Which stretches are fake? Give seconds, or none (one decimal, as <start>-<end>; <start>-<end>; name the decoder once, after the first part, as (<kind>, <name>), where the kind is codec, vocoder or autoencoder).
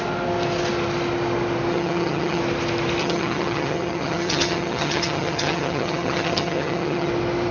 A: 1.7-2.4 (vocoder, HiFi-GAN); 3.0-7.1